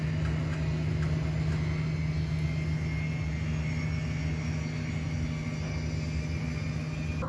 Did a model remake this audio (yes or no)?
no